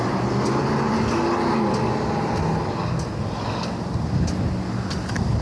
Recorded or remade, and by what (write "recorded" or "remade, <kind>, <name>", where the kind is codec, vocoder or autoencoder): recorded